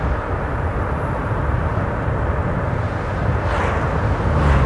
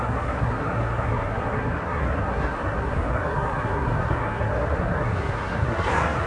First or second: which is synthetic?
second